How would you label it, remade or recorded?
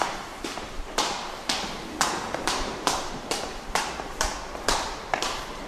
remade